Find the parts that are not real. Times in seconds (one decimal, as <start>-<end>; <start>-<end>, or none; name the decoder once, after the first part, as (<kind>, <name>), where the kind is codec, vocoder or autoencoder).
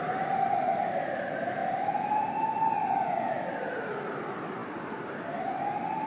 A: 4.6-6.1 (vocoder, BigVGAN v2)